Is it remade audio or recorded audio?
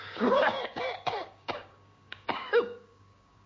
remade